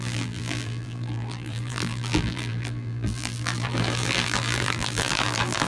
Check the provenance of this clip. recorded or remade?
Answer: remade